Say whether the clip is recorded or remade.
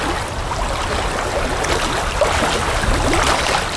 recorded